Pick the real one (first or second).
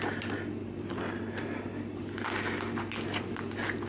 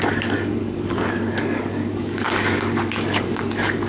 first